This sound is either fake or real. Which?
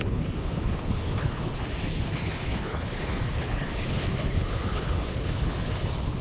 fake